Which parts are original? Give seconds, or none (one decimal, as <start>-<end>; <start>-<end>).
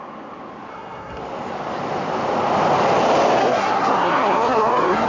0.0-0.7; 1.2-3.4